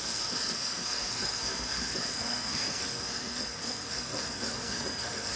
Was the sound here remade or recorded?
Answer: remade